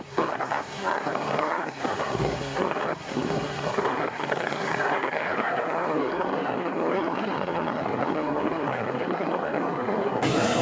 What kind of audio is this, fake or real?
fake